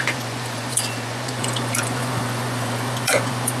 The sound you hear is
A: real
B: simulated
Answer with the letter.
B